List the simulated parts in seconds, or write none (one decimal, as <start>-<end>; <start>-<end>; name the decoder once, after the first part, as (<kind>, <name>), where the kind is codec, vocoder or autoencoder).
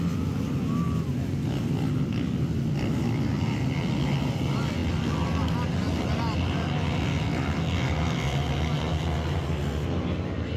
none